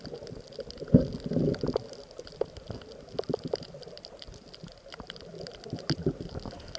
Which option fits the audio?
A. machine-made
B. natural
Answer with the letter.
B